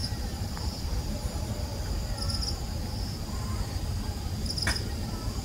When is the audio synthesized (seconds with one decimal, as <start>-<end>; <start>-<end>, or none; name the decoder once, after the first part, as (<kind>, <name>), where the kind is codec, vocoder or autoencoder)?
0.0-1.7 (vocoder, BigVGAN v2); 4.9-5.4